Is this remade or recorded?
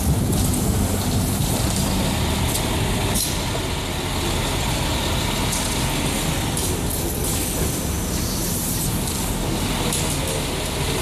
recorded